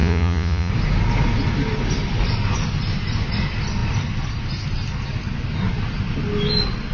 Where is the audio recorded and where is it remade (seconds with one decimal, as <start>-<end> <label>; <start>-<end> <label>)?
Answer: 0.0-0.7 remade; 0.7-6.9 recorded